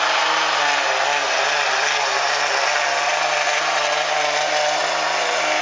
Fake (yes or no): no